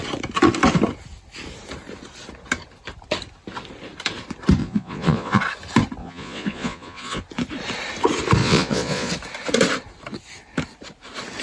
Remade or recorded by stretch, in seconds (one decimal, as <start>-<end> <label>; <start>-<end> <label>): 0.0-4.6 recorded; 4.6-5.4 remade; 5.4-6.0 recorded; 6.0-7.2 remade; 7.2-8.4 recorded; 8.4-9.1 remade; 9.1-11.4 recorded